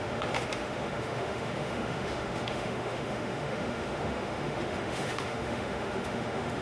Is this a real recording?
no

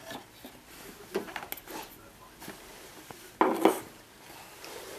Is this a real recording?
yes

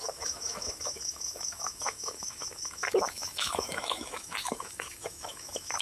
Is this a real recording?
no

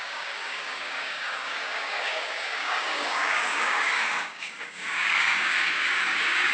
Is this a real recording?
no